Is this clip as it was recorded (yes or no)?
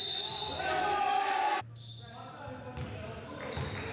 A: yes